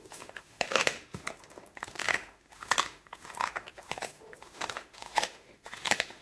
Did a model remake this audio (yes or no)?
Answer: yes